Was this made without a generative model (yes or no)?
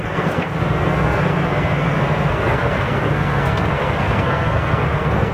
no